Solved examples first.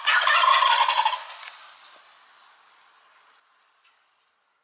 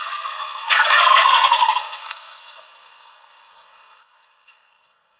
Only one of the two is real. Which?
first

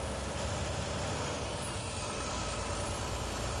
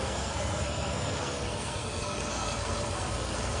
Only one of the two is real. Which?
first